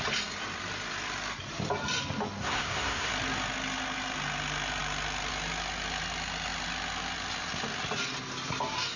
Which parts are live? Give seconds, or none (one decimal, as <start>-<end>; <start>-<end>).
0.0-2.4; 3.1-9.0